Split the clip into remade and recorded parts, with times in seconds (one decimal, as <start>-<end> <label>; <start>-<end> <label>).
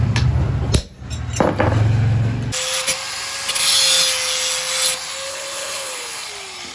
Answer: 0.0-5.3 recorded; 5.3-6.3 remade; 6.3-6.7 recorded